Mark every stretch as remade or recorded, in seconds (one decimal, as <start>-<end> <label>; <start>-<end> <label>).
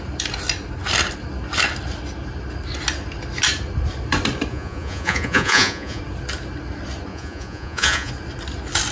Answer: 0.0-4.5 recorded; 4.5-6.0 remade; 6.0-7.1 recorded; 7.1-8.1 remade; 8.1-8.9 recorded